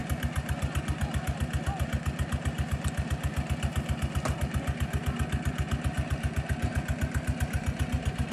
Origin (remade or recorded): recorded